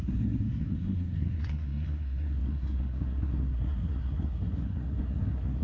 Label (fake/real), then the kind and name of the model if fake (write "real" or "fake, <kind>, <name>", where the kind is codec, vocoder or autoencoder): fake, codec, SNAC